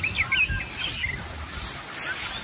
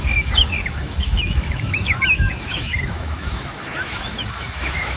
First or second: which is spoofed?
second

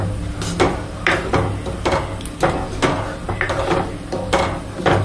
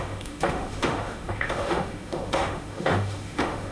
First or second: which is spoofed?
second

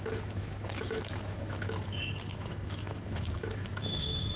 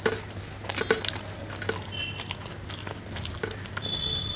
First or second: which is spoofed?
first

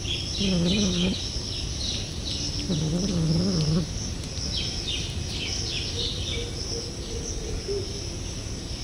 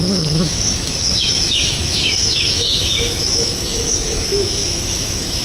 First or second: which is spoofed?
second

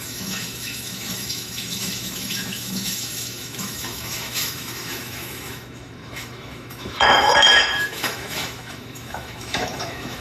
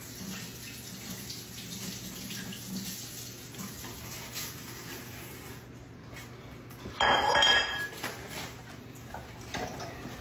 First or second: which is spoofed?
first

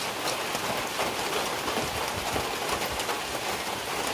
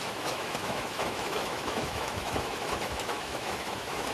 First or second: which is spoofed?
second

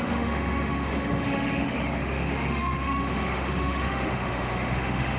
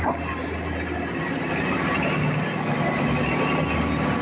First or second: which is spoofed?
first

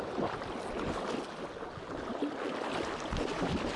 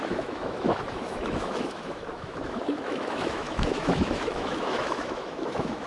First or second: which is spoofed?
second